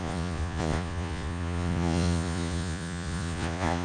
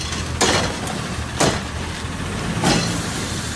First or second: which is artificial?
first